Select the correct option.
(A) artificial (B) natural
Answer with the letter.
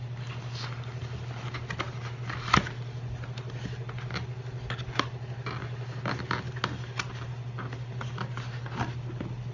B